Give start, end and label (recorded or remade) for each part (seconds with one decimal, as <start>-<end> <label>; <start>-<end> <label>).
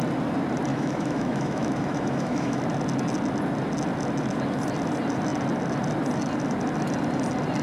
0.0-0.7 recorded; 0.7-2.6 remade; 2.6-7.6 recorded